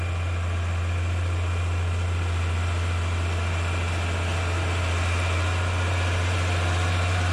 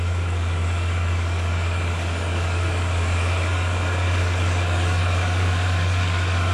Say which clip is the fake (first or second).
second